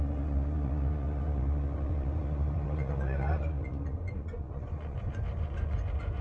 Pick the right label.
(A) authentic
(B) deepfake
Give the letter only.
B